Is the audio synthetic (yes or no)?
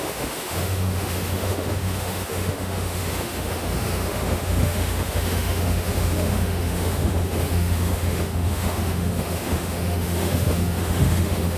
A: yes